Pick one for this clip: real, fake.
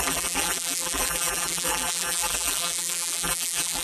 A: fake